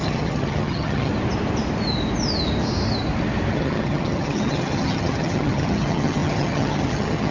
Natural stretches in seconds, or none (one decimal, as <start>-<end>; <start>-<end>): 1.1-3.5

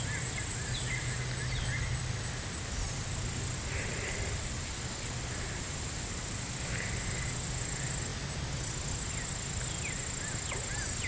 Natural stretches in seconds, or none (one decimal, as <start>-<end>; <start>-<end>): 0.0-11.1